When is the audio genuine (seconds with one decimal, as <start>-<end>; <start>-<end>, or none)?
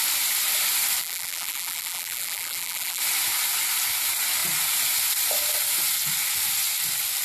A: 0.0-1.0; 3.0-7.2